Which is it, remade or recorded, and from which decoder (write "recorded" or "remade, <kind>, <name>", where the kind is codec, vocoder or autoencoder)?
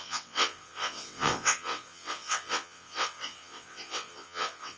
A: remade, vocoder, WaveNeXt